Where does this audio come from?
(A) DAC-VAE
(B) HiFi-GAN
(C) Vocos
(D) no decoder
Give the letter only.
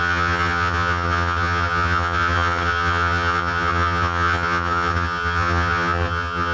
B